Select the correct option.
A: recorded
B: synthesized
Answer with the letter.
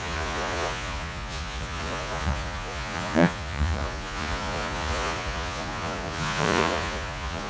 B